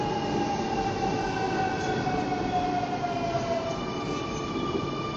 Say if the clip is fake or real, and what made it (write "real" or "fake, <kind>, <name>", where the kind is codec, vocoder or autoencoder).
real